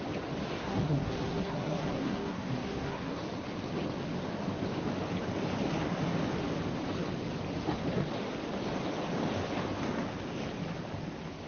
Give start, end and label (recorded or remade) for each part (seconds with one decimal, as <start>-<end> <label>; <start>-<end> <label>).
0.0-0.6 recorded; 0.6-3.2 remade; 3.2-11.5 recorded

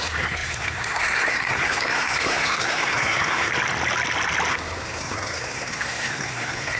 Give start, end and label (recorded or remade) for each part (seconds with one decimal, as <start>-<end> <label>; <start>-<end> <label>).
0.0-3.5 remade; 3.5-4.5 recorded; 4.5-6.8 remade

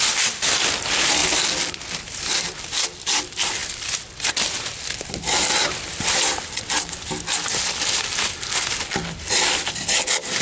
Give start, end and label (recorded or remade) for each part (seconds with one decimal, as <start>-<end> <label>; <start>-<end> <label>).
0.0-10.4 recorded

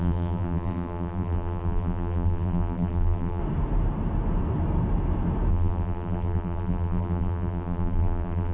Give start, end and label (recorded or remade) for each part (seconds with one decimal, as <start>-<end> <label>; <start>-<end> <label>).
0.0-3.4 remade; 3.4-5.5 recorded; 5.5-8.5 remade